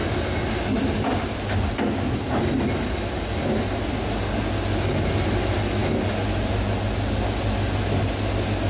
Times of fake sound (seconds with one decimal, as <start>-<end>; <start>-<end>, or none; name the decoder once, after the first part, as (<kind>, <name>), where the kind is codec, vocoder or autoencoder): none